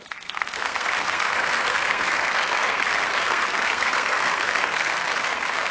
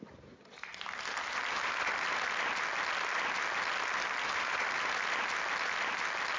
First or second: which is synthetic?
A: first